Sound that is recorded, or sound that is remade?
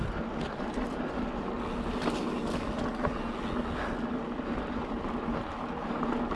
recorded